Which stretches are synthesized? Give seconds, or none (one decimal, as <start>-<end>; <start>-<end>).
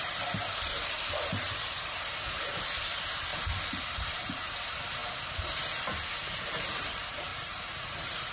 0.0-5.0; 6.4-8.3